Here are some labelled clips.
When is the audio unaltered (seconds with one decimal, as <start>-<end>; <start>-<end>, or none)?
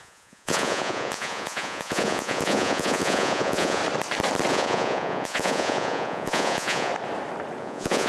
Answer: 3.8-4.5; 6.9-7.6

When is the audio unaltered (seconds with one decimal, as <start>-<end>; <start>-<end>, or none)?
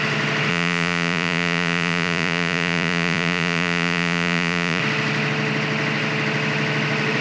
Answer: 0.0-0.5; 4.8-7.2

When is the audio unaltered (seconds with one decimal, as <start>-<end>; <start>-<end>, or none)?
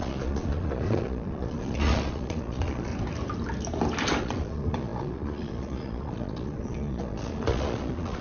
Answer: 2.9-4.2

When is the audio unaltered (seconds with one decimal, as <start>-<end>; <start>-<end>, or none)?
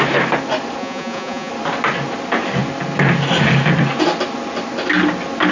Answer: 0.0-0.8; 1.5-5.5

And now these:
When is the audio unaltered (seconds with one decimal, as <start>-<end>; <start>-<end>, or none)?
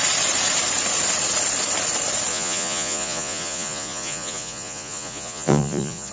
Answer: 0.0-2.3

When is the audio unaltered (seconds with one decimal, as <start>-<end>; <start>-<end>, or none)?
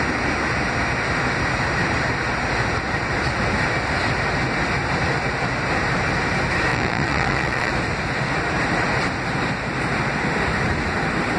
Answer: 0.0-6.7; 7.7-11.4